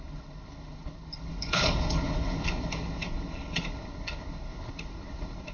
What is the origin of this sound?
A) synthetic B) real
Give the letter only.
A